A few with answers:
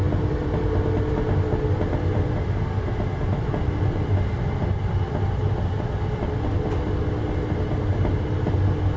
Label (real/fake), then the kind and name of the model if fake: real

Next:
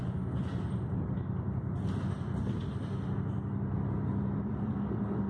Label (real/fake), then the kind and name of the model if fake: real